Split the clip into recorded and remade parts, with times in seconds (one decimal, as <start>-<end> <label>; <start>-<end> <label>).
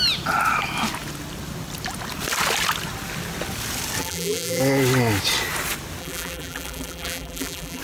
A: 0.0-4.0 recorded; 4.0-4.6 remade; 4.6-6.0 recorded; 6.0-7.8 remade